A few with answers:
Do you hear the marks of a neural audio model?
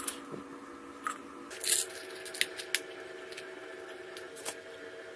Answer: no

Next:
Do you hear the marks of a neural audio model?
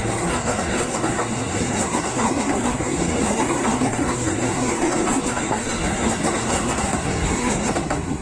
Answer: yes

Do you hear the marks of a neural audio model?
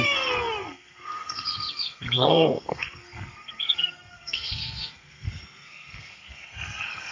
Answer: yes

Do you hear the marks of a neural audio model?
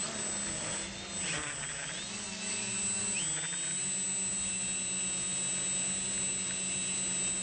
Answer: no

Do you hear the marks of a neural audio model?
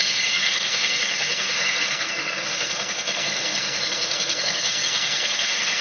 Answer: yes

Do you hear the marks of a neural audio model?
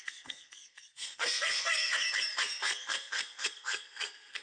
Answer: yes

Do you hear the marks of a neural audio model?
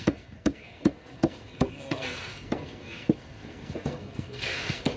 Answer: yes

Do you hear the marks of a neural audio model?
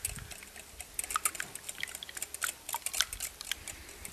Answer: no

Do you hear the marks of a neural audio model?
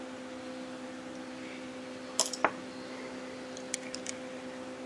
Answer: no